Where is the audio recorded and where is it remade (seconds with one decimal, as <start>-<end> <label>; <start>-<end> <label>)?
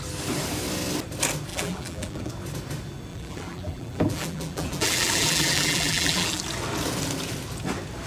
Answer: 0.0-1.5 recorded; 1.5-2.3 remade; 2.3-3.1 recorded; 3.1-6.4 remade; 6.4-8.1 recorded